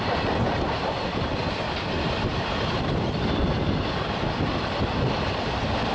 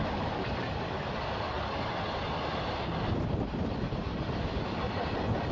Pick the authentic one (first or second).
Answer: second